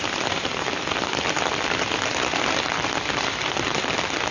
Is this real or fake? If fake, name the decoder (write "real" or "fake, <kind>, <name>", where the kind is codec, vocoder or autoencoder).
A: real